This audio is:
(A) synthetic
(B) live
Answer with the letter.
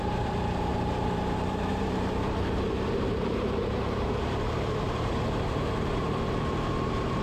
A